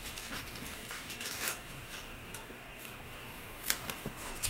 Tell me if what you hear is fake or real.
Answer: fake